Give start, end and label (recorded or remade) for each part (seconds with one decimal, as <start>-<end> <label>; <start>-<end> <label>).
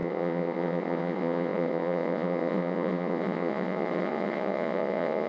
0.0-5.3 remade